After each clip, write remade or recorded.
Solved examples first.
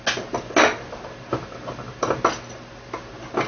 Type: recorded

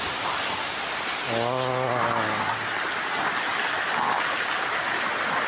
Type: recorded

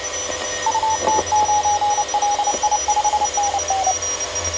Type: recorded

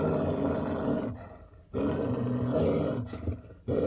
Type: recorded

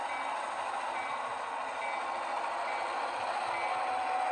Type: recorded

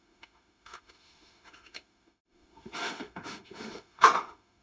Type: remade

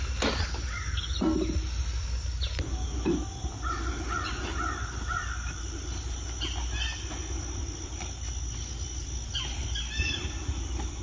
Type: recorded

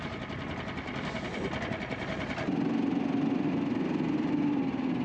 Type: recorded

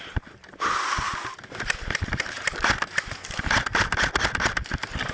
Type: recorded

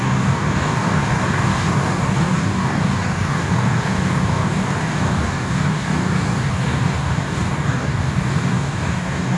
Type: remade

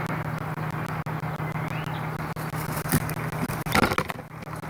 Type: recorded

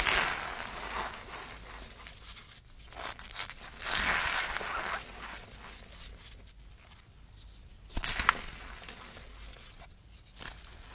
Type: recorded